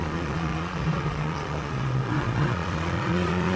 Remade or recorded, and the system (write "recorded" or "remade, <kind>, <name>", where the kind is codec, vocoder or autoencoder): remade, vocoder, Vocos